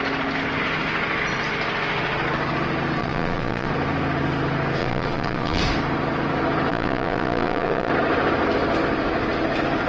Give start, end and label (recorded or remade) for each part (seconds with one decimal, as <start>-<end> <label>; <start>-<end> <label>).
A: 0.0-3.0 recorded; 3.0-3.7 remade; 3.7-4.8 recorded; 4.8-5.6 remade; 5.6-6.7 recorded; 6.7-7.9 remade; 7.9-9.9 recorded